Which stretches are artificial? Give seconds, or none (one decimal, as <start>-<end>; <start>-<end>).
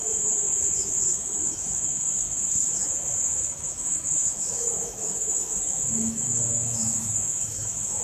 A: 0.0-8.0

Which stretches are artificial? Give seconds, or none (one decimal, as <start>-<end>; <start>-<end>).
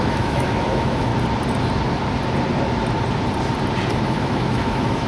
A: 0.0-1.1; 3.9-5.1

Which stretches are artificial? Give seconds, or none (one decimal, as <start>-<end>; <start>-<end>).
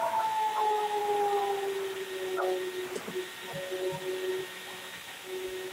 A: 0.0-1.0; 4.4-5.7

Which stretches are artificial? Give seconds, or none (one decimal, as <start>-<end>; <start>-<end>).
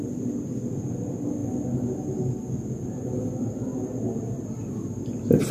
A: none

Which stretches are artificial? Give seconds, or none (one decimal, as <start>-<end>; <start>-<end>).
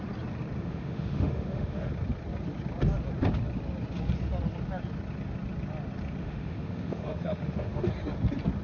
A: 0.6-1.9; 6.2-7.9